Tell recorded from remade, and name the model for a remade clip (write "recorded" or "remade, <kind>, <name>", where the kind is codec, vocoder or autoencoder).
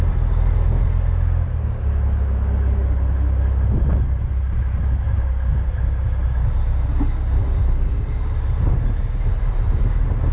recorded